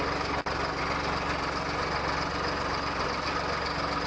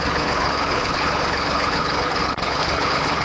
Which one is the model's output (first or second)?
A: second